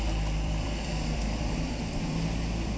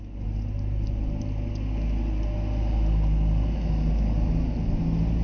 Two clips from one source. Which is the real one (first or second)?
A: second